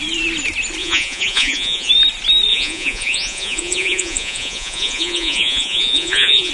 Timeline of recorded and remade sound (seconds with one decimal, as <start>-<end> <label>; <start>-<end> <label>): 0.0-0.8 recorded; 0.8-1.9 remade; 1.9-2.5 recorded; 2.5-6.5 remade